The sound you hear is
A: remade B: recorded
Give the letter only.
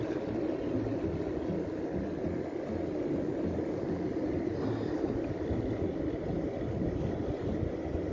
B